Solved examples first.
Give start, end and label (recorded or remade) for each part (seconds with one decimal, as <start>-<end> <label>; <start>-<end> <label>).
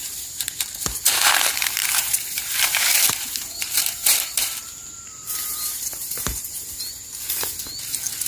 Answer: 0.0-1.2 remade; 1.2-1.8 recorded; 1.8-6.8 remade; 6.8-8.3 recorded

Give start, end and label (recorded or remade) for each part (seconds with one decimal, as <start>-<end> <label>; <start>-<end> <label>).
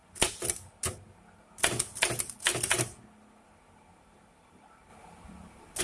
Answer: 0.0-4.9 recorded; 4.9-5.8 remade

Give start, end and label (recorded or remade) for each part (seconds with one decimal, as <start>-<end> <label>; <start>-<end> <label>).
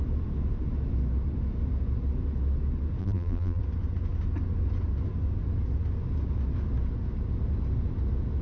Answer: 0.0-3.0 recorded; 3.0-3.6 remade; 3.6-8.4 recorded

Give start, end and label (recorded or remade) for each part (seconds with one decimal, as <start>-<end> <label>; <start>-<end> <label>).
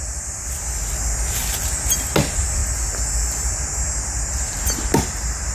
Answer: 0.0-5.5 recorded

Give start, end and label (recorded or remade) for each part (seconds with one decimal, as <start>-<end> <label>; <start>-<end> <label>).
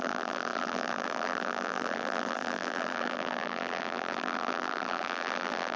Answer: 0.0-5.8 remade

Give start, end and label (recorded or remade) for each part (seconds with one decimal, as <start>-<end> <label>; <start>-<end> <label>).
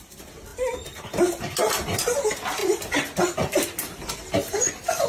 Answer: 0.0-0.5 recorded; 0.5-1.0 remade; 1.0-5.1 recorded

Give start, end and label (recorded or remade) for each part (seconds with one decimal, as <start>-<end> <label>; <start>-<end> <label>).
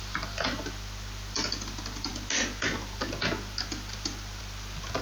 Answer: 0.0-5.0 recorded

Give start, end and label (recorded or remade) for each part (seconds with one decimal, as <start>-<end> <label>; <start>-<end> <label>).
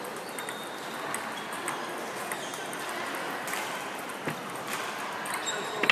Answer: 0.0-5.9 recorded